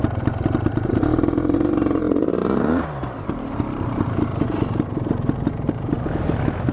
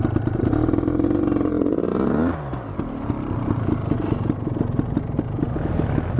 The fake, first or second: first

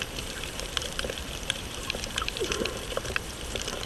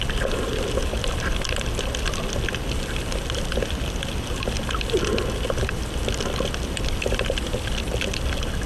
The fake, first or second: first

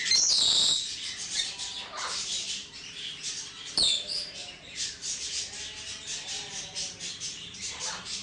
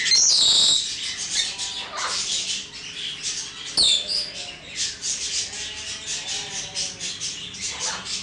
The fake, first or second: first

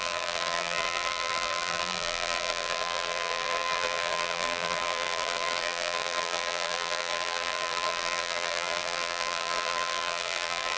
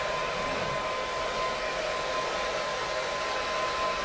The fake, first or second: first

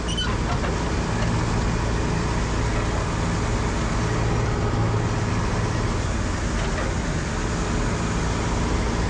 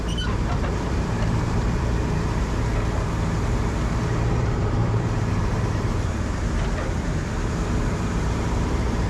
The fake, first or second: second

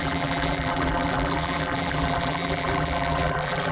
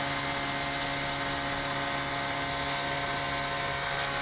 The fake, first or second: first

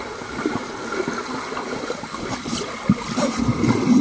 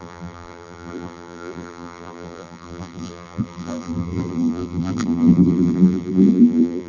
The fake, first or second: second